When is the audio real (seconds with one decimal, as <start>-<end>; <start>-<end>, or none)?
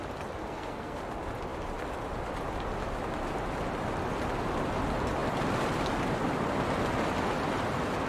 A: 0.0-0.4; 1.0-8.1